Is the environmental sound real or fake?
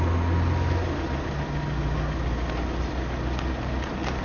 real